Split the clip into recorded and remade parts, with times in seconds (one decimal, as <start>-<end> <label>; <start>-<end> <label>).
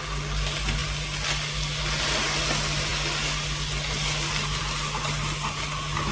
0.0-6.1 recorded